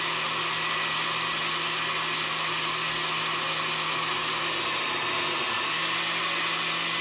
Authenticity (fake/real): real